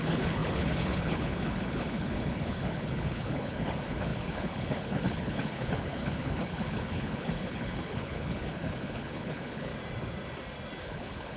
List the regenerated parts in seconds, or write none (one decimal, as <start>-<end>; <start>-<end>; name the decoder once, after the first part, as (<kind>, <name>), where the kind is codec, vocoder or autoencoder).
0.0-9.7 (codec, HILCodec); 10.8-11.4